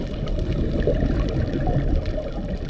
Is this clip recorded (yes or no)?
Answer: yes